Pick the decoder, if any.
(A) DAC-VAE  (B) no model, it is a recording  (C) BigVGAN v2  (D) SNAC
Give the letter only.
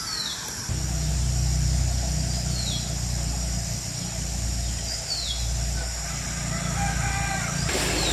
B